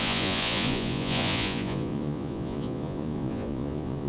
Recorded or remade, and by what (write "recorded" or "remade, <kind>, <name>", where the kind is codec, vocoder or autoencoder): remade, vocoder, Vocos